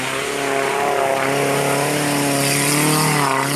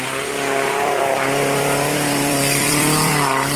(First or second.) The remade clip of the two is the second